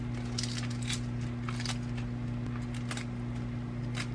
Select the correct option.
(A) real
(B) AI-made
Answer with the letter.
A